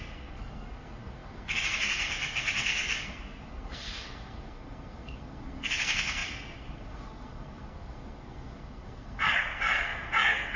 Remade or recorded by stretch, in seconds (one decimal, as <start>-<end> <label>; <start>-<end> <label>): 0.0-10.6 remade